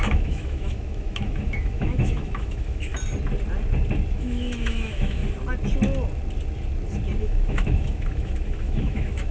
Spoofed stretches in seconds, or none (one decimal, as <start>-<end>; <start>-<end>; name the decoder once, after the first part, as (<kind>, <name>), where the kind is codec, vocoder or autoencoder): 0.0-2.9 (autoencoder, DAC-VAE); 4.1-5.2; 7.2-9.3